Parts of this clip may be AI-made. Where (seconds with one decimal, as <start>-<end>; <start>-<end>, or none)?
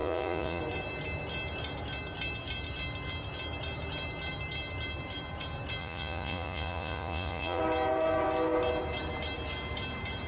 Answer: 0.0-0.6; 5.8-7.6